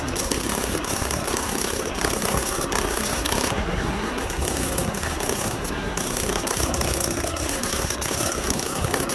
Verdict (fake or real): fake